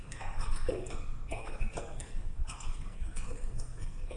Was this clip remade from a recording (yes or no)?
yes